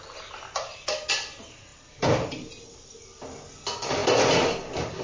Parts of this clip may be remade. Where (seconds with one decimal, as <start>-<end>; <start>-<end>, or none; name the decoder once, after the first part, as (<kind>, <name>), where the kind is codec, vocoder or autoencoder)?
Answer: none

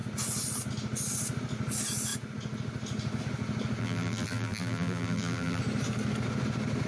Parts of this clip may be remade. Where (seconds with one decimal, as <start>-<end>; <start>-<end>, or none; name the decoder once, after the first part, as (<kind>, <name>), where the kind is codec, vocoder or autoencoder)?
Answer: 3.8-5.6 (vocoder, BigVGAN v2)

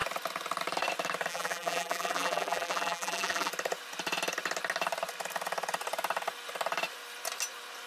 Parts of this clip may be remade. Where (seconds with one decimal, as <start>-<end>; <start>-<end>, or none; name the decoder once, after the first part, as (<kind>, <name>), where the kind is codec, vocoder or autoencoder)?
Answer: 1.3-3.5 (vocoder, BigVGAN v2)

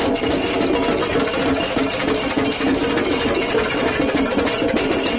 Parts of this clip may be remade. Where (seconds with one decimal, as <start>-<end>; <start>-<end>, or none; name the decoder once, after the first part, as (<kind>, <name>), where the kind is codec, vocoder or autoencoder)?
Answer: 3.1-3.7 (vocoder, BigVGAN v2)

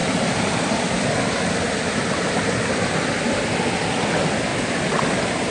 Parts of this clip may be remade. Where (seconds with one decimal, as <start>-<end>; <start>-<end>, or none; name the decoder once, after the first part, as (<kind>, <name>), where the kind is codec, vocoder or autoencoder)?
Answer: 0.0-1.1 (vocoder, BigVGAN v2); 4.5-5.5

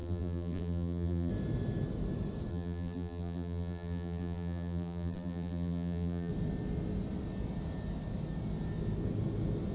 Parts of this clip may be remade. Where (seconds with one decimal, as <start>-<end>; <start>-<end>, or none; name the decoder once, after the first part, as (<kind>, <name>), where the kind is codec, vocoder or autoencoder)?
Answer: 0.0-1.3 (vocoder, BigVGAN v2); 2.5-6.3